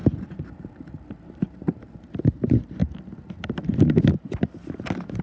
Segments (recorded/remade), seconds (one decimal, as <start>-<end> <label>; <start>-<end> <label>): 0.0-2.8 remade; 2.8-5.2 recorded